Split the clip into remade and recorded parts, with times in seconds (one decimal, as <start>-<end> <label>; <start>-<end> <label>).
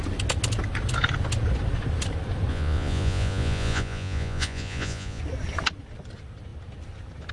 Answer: 0.0-2.5 recorded; 2.5-5.2 remade; 5.2-7.3 recorded